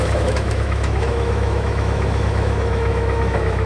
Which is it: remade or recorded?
remade